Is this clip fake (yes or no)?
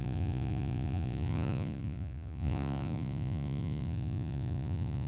yes